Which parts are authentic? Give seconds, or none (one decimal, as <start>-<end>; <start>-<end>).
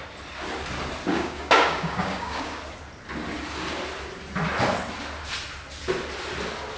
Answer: 0.0-1.1; 2.6-6.8